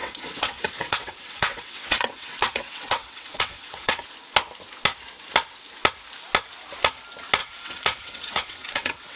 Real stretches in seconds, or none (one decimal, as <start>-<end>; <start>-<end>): 4.0-7.4